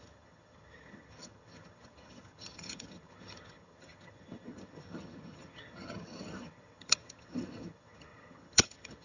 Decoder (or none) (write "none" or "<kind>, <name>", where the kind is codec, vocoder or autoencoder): vocoder, HiFi-GAN